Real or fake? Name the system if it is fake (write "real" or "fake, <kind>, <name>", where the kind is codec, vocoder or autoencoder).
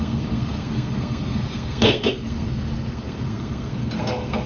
fake, codec, SNAC